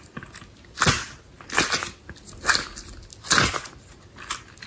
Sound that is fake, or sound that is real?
real